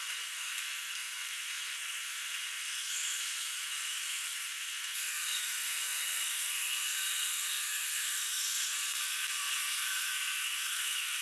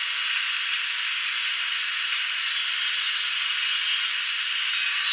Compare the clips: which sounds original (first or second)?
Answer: second